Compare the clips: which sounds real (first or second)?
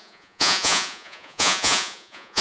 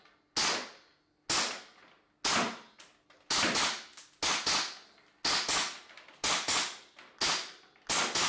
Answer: second